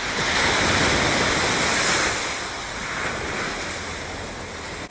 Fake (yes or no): no